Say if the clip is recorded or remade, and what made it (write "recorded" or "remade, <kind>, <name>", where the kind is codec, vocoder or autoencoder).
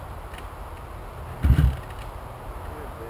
recorded